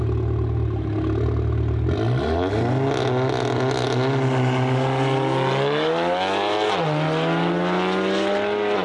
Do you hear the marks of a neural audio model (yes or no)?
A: no